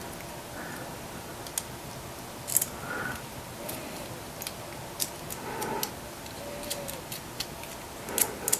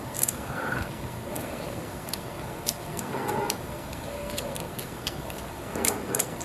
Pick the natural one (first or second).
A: first